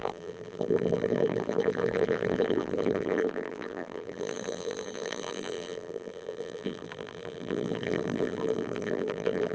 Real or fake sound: fake